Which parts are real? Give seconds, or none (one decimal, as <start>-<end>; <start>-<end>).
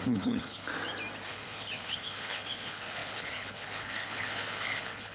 0.7-1.3